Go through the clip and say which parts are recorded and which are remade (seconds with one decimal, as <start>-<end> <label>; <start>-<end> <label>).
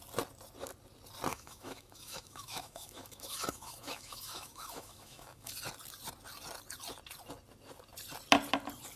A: 0.0-1.3 recorded; 1.3-5.5 remade; 5.5-9.0 recorded